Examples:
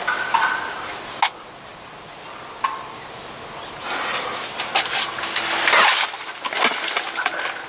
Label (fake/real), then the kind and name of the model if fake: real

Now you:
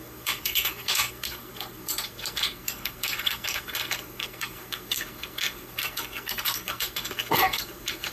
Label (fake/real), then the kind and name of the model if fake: fake, codec, SNAC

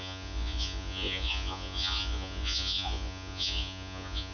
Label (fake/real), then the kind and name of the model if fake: fake, vocoder, Vocos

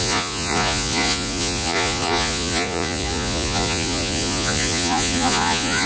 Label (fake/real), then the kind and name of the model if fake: fake, vocoder, Vocos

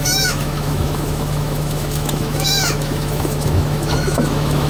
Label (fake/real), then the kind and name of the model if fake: fake, autoencoder, DAC-VAE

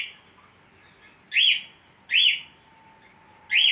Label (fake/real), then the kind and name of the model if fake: real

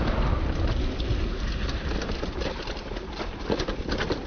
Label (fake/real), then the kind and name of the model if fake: real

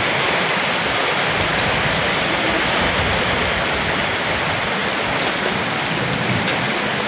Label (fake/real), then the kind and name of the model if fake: real